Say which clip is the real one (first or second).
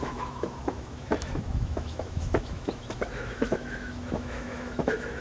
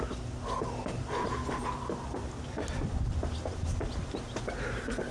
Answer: second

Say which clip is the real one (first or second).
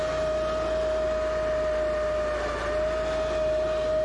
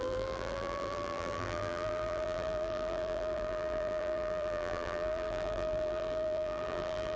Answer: first